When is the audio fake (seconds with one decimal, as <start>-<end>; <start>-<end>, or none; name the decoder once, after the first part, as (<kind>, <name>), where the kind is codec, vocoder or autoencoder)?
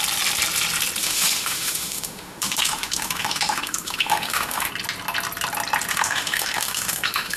1.0-4.7 (autoencoder, DAC-VAE); 5.9-7.4